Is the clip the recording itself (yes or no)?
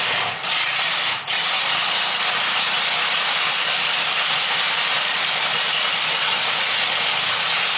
yes